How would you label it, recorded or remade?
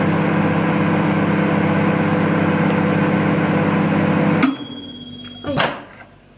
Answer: recorded